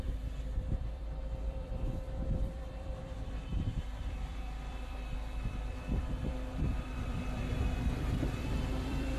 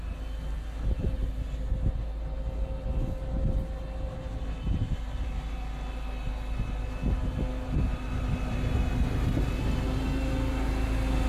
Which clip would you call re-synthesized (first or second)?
first